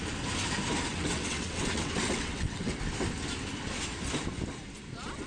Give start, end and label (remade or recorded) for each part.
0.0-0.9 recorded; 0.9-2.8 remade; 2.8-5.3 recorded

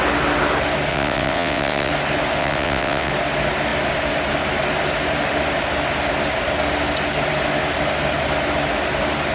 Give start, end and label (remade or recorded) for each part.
0.0-0.9 recorded; 0.9-1.9 remade; 1.9-2.4 recorded; 2.4-3.1 remade; 3.1-9.3 recorded

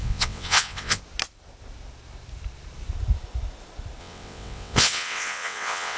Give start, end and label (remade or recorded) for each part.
0.0-1.0 remade; 1.0-4.0 recorded; 4.0-6.0 remade